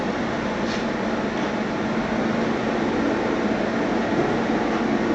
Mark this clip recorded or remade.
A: recorded